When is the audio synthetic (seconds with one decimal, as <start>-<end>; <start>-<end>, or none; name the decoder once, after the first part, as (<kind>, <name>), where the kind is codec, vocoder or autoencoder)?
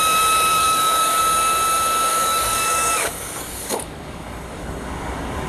0.5-1.2 (codec, DAC); 2.1-5.5